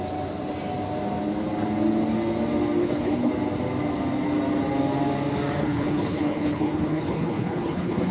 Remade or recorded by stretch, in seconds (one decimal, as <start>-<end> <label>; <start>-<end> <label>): 0.0-2.8 recorded; 2.8-3.3 remade; 3.3-5.6 recorded; 5.6-8.1 remade